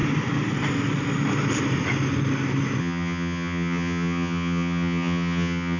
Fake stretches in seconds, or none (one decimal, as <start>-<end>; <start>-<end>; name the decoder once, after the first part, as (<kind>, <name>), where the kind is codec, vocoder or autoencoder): 2.8-5.8 (vocoder, HiFi-GAN)